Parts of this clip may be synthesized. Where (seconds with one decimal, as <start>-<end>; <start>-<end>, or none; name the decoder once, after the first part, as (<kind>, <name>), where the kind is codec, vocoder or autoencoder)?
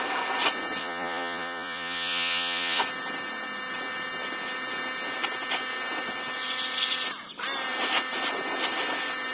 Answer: 0.8-2.8 (vocoder, Vocos)